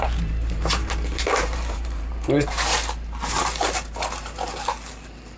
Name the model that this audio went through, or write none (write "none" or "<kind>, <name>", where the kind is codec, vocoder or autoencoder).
vocoder, BigVGAN v2